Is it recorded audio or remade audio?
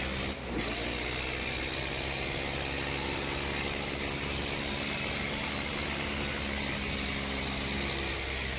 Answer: recorded